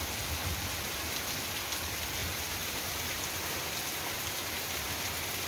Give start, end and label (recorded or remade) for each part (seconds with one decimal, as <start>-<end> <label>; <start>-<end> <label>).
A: 0.0-2.2 recorded; 2.2-3.3 remade; 3.3-5.5 recorded